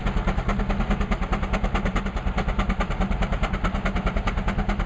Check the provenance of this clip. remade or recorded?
recorded